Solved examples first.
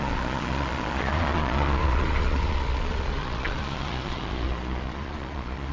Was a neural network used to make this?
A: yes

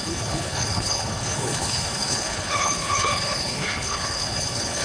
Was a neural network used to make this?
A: yes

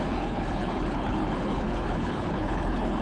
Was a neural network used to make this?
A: yes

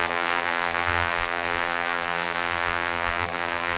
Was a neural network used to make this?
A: yes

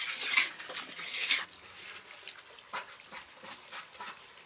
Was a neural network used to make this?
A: no